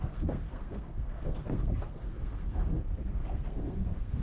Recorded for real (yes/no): no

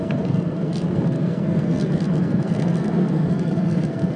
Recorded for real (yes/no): no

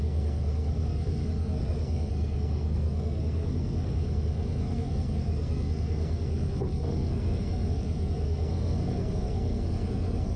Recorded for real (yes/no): no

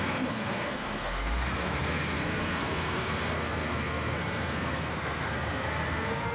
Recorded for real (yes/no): no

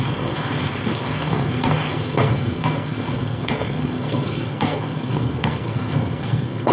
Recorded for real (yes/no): no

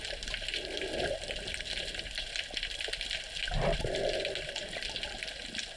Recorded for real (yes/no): yes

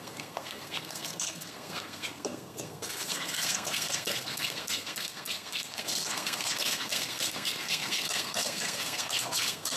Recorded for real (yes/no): no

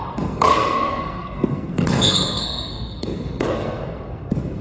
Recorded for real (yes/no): no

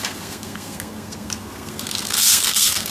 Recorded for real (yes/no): no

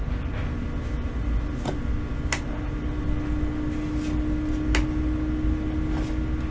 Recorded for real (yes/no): yes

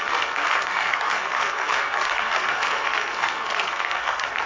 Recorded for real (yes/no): no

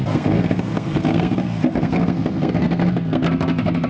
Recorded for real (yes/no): no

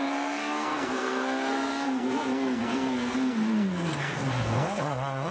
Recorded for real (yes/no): no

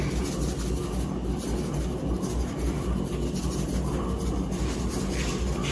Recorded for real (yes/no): yes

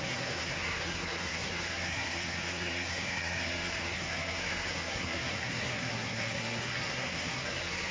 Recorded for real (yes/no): no